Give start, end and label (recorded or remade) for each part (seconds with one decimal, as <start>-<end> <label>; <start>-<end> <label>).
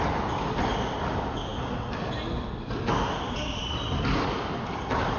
0.0-5.2 recorded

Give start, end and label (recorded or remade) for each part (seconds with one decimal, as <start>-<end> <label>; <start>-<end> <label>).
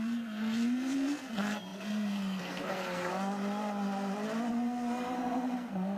0.0-3.1 remade; 3.1-4.5 recorded; 4.5-6.0 remade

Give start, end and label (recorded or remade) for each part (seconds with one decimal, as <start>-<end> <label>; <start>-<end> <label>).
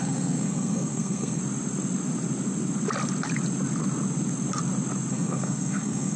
0.0-1.4 remade; 1.4-5.1 recorded; 5.1-6.2 remade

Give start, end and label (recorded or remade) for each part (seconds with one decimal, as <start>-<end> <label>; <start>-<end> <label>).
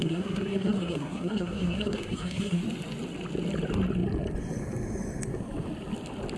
0.0-2.6 remade; 2.6-6.4 recorded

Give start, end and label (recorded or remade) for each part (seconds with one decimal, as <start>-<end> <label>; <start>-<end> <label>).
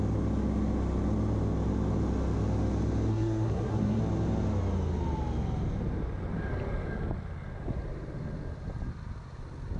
0.0-3.1 recorded; 3.1-4.0 remade; 4.0-9.8 recorded